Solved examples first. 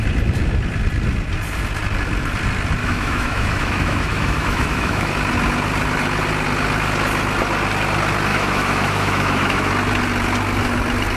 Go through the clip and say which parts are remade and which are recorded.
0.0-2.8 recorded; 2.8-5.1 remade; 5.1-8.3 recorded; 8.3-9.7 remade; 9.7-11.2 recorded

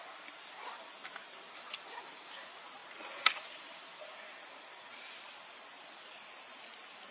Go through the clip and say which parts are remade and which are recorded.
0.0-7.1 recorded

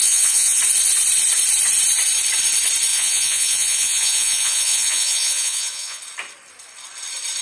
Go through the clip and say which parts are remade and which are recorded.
0.0-0.6 remade; 0.6-2.9 recorded; 2.9-6.0 remade; 6.0-7.4 recorded

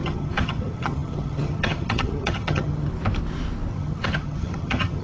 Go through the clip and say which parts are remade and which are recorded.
0.0-2.9 remade; 2.9-3.7 recorded; 3.7-5.0 remade

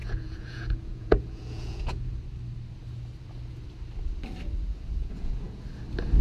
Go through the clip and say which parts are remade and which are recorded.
0.0-2.1 remade; 2.1-5.0 recorded; 5.0-5.6 remade; 5.6-6.2 recorded